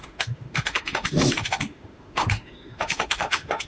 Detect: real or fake fake